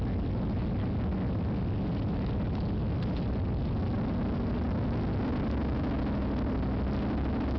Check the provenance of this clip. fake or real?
real